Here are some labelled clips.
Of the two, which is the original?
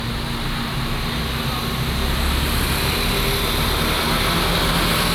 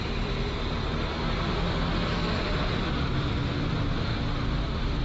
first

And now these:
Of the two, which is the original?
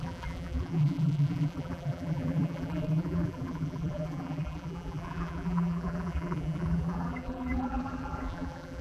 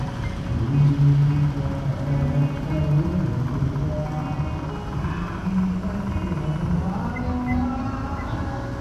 second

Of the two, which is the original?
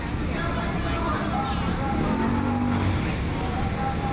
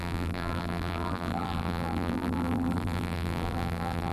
first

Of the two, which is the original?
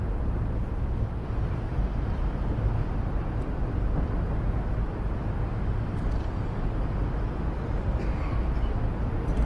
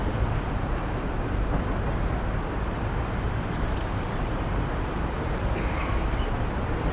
first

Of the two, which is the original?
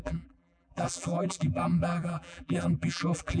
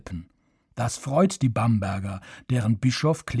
second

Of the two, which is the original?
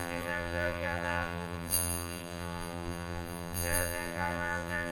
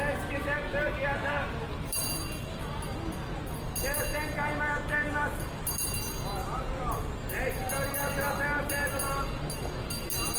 second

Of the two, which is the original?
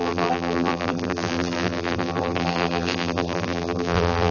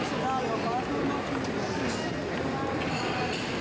second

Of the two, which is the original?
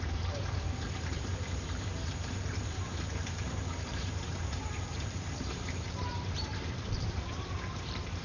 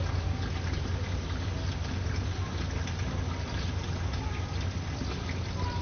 second